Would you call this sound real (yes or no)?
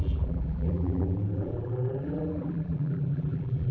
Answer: no